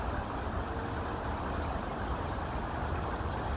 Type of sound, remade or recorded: recorded